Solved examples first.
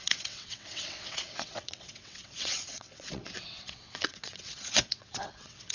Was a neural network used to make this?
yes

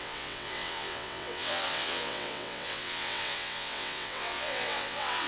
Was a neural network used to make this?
yes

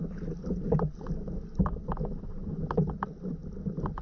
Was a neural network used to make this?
no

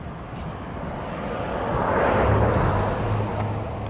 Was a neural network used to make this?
no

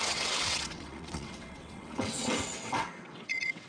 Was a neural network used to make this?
yes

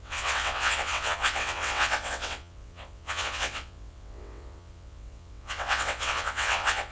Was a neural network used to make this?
yes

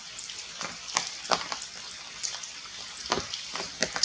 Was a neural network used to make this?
no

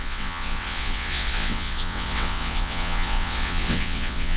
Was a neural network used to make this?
yes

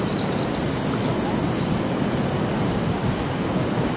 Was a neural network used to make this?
no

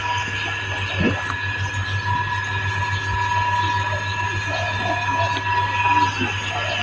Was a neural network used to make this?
no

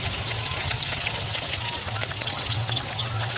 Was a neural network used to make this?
yes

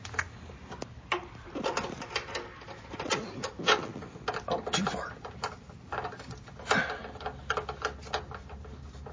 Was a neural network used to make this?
no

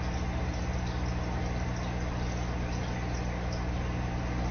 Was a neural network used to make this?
no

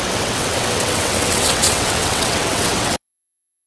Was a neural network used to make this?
yes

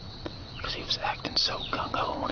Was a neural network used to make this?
yes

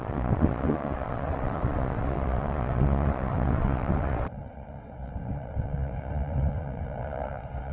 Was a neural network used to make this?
yes